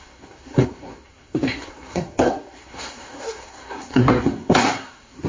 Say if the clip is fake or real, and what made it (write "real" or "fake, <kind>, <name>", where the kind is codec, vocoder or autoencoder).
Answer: fake, codec, SNAC